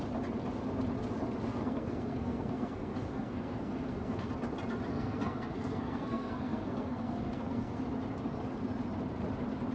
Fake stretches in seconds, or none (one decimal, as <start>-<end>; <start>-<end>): 1.5-4.3; 4.9-7.8

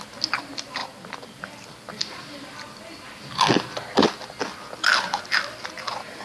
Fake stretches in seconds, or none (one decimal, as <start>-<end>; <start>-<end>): 0.8-1.9

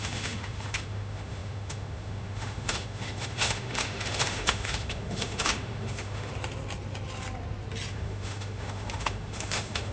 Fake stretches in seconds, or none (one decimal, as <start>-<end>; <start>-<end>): 0.0-6.3; 7.9-9.9